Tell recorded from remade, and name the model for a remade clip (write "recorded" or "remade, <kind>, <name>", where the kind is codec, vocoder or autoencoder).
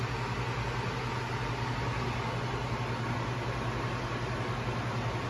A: recorded